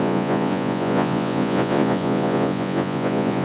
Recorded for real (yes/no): no